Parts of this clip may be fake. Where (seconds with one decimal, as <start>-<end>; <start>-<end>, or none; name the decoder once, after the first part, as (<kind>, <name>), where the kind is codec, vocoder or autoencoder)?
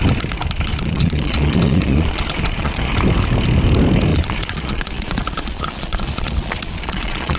0.7-2.9 (vocoder, Vocos); 4.1-7.4